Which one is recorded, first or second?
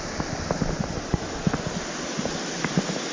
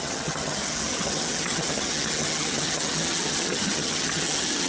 first